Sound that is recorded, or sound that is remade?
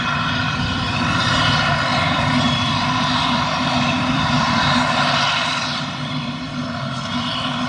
remade